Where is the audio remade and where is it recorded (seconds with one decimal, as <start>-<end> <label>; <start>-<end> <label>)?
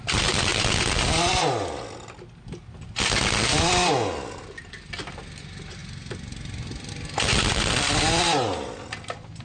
0.0-9.4 recorded